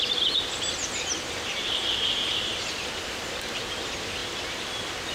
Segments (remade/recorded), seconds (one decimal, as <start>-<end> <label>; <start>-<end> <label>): 0.0-0.8 recorded; 0.8-3.6 remade; 3.6-4.2 recorded; 4.2-5.1 remade